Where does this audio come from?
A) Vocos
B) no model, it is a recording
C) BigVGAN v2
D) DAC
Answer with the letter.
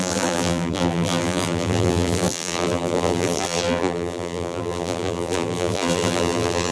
C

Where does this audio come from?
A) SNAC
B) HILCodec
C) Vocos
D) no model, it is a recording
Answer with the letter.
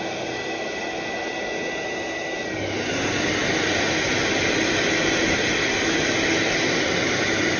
D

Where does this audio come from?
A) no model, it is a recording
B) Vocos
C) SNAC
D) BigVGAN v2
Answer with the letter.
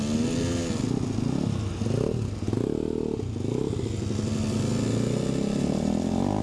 A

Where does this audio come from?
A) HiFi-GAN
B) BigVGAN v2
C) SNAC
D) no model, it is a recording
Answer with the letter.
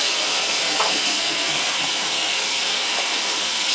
C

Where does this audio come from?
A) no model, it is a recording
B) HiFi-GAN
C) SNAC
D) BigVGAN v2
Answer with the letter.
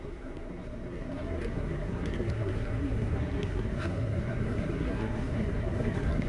C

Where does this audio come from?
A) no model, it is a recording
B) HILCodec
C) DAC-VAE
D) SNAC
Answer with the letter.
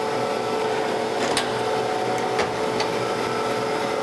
A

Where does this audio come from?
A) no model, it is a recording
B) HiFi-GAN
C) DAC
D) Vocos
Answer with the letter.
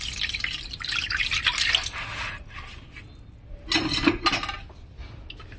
A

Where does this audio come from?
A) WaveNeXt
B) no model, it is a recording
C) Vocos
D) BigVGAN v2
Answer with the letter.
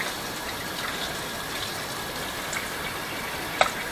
B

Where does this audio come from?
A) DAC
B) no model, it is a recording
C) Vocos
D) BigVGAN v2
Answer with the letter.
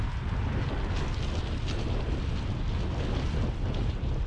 B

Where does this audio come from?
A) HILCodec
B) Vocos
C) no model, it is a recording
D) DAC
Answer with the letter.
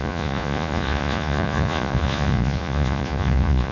B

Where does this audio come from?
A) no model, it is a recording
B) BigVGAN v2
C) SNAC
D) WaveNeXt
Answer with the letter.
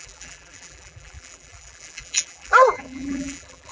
B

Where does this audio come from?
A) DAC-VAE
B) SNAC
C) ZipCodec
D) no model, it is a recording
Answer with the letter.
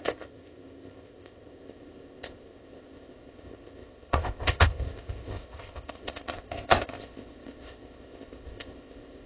C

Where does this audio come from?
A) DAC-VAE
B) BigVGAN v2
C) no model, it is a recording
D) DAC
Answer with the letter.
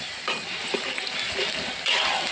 B